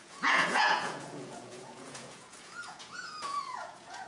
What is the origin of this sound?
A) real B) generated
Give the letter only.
B